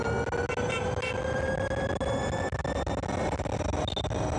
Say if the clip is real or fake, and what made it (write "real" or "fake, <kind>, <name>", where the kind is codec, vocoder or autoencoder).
real